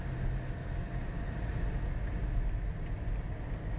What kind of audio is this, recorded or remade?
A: recorded